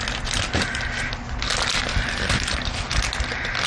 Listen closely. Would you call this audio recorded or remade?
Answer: recorded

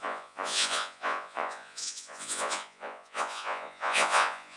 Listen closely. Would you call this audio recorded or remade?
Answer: remade